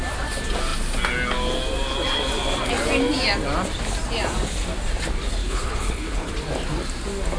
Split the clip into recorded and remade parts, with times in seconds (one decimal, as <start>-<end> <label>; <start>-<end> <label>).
0.0-5.4 recorded; 5.4-6.3 remade; 6.3-7.4 recorded